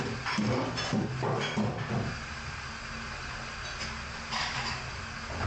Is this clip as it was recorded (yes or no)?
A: yes